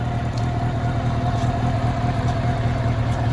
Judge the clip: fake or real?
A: real